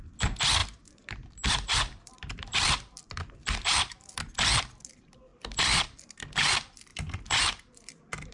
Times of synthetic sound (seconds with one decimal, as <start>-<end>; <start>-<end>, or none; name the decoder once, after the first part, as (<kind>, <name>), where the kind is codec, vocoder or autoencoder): 0.6-4.2 (vocoder, BigVGAN v2); 5.3-6.0